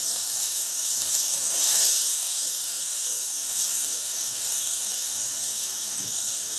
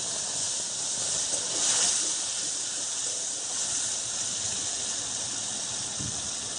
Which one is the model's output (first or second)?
first